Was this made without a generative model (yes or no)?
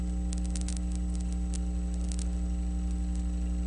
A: yes